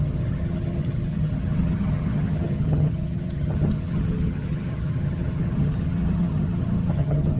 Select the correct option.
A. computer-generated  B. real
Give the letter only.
A